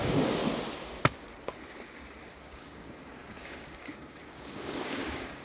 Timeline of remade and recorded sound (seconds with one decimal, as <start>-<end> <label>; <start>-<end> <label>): 0.0-0.4 remade; 0.4-2.4 recorded; 2.4-5.4 remade